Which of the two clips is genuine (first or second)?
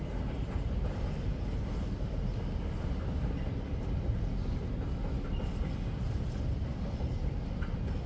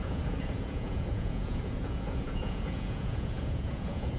first